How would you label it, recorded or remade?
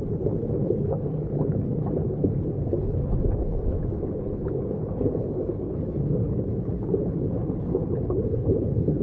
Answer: remade